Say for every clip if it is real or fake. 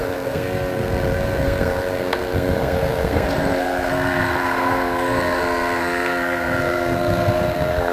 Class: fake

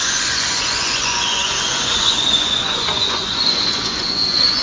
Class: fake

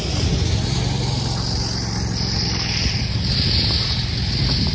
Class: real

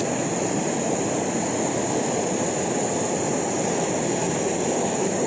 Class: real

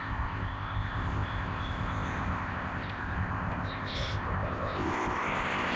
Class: fake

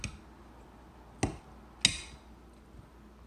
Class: real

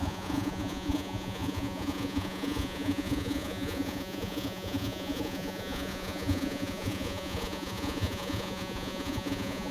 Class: fake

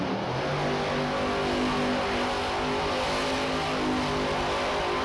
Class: real